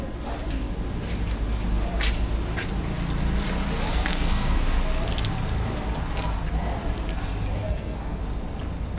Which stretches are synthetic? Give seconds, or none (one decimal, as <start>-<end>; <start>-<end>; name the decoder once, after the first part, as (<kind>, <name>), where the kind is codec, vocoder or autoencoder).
3.9-4.6 (codec, SNAC); 7.6-8.2